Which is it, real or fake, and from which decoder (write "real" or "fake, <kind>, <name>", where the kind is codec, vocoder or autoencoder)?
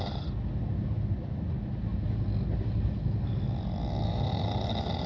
real